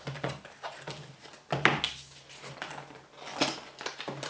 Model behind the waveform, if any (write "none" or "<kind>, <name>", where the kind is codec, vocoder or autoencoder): none